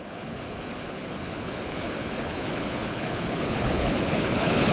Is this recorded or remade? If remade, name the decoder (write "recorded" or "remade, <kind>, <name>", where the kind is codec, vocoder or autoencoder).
remade, codec, HILCodec